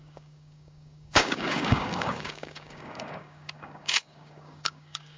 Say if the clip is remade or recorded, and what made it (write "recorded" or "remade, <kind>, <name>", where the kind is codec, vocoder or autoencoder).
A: remade, codec, DAC